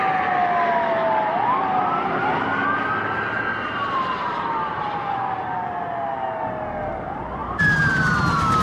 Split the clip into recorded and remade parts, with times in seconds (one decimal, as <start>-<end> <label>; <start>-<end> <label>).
0.0-3.5 recorded; 3.5-4.8 remade; 4.8-7.4 recorded; 7.4-8.0 remade; 8.0-8.6 recorded